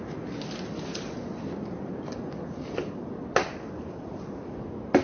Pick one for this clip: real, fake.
real